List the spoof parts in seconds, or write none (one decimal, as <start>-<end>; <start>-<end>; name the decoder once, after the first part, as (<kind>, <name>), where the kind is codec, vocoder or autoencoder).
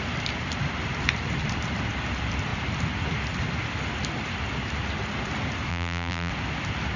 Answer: 5.7-6.3 (vocoder, BigVGAN v2)